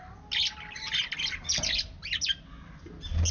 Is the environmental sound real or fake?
real